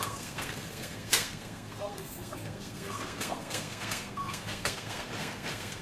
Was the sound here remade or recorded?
remade